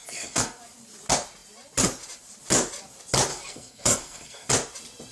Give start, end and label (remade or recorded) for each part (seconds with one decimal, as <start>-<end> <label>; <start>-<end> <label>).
0.0-0.6 remade; 0.6-3.3 recorded; 3.3-4.5 remade; 4.5-5.1 recorded